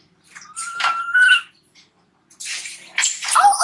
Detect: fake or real real